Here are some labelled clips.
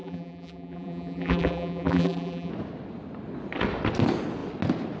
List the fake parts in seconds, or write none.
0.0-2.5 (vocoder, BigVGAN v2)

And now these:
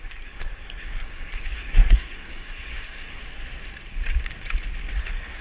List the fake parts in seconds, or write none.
0.0-3.2 (codec, SNAC); 5.0-5.4

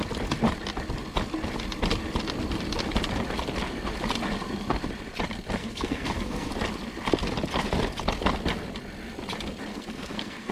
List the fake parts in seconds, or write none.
5.6-6.5 (codec, SNAC); 9.7-10.5

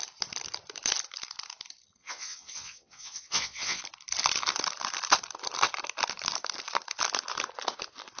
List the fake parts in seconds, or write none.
2.0-3.8 (vocoder, WaveNeXt)

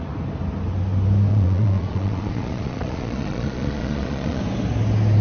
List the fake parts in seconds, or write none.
1.3-4.4 (vocoder, Vocos)